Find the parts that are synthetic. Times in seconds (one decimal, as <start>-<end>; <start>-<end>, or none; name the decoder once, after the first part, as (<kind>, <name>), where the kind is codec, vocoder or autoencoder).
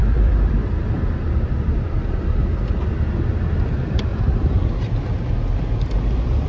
0.0-2.4 (vocoder, BigVGAN v2); 4.1-5.3